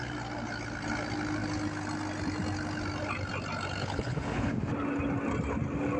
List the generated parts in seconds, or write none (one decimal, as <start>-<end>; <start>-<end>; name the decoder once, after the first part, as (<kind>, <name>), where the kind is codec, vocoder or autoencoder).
3.8-4.5 (codec, HILCodec)